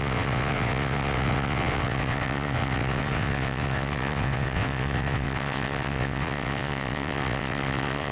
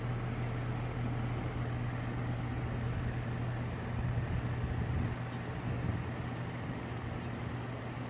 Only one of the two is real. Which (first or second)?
second